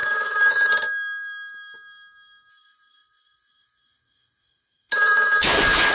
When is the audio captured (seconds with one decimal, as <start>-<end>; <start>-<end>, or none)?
0.7-2.5